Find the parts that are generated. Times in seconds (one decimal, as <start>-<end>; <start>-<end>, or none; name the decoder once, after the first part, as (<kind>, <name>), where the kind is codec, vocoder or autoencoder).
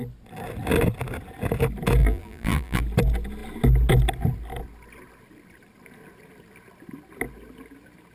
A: 2.0-2.8 (vocoder, BigVGAN v2)